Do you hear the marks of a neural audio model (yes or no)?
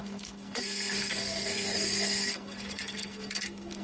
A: yes